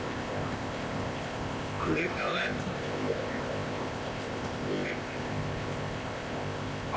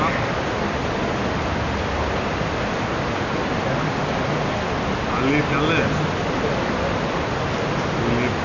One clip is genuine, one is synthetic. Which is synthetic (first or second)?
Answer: first